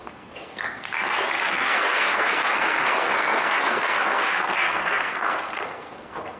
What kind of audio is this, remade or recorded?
remade